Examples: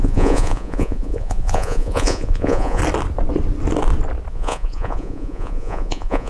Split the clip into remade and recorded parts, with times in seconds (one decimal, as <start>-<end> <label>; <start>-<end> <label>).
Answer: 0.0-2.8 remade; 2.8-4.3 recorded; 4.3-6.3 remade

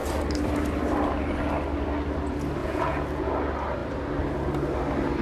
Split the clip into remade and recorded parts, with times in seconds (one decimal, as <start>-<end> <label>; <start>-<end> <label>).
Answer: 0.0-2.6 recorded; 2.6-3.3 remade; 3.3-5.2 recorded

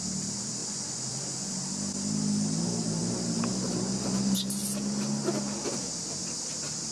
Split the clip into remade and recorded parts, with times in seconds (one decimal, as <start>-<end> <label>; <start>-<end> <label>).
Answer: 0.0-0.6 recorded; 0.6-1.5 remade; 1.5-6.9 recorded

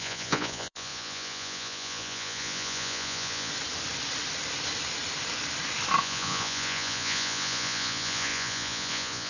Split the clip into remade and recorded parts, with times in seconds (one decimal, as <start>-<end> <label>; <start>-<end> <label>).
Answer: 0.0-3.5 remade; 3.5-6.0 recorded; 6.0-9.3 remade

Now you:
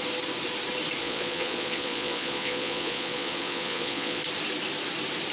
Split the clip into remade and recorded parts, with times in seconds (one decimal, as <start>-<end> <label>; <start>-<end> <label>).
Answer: 0.0-1.0 recorded; 1.0-4.2 remade; 4.2-5.3 recorded